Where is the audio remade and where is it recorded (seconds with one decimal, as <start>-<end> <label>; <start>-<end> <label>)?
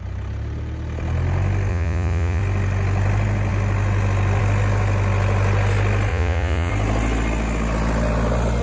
0.0-1.7 recorded; 1.7-2.4 remade; 2.4-6.1 recorded; 6.1-6.7 remade; 6.7-8.6 recorded